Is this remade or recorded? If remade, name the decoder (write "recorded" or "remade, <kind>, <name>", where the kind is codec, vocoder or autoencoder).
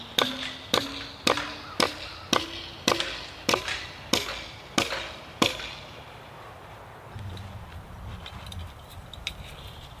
recorded